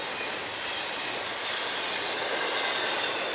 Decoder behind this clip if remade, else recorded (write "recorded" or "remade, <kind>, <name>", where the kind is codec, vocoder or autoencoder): recorded